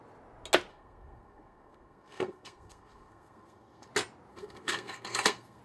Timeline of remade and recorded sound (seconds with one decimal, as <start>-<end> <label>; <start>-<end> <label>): 0.0-0.7 recorded; 0.7-3.9 remade; 3.9-4.3 recorded; 4.3-5.6 remade